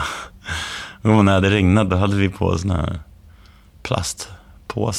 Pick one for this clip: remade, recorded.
recorded